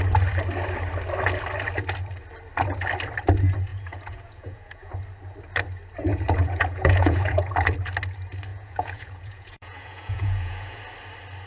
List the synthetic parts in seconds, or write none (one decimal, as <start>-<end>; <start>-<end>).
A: 3.7-4.9; 6.1-7.5; 8.5-10.8